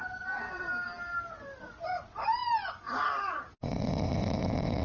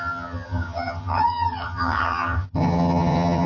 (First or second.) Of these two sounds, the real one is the first